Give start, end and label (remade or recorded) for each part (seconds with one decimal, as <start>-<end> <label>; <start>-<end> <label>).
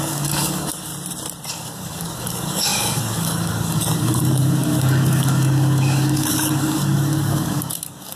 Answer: 0.0-0.9 remade; 0.9-1.5 recorded; 1.5-8.1 remade